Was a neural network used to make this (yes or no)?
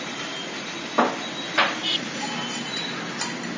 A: no